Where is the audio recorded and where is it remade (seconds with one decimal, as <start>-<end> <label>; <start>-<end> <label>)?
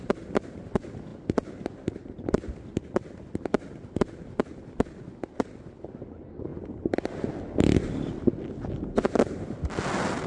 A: 0.0-10.3 recorded